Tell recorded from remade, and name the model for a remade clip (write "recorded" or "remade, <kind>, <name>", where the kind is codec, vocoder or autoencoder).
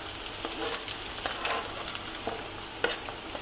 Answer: recorded